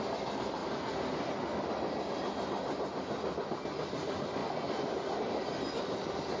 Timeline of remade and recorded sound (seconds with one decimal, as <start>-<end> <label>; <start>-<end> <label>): 0.0-6.4 recorded